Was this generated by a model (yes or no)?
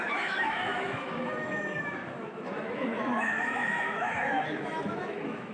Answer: yes